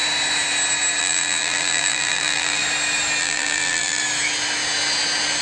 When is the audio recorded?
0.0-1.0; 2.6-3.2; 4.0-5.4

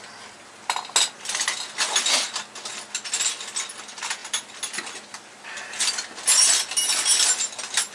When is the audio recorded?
0.0-7.9